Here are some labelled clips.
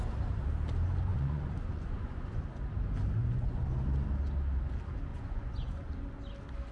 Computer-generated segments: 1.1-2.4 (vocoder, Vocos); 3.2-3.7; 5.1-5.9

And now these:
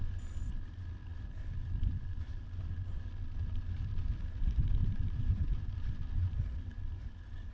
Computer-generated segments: 4.8-7.1 (vocoder, BigVGAN v2)

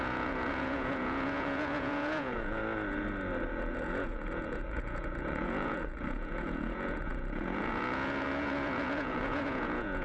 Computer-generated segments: 0.0-2.6 (vocoder, Vocos); 3.5-10.0